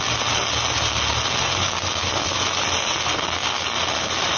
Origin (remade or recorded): recorded